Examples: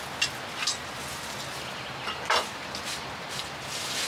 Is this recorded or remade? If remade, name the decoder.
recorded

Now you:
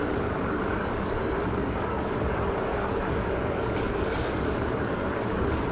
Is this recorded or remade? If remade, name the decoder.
remade, codec, DAC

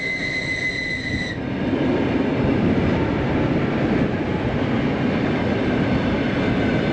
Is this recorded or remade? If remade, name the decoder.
recorded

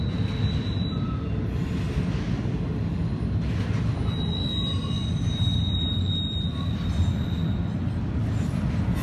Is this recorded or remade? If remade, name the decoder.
recorded